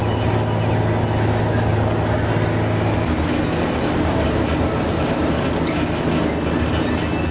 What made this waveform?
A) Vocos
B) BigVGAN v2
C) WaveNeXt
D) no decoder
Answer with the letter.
D